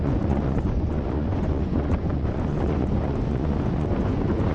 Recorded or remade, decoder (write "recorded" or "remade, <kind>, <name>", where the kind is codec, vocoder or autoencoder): remade, vocoder, Vocos